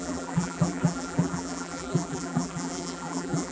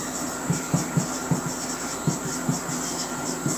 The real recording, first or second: second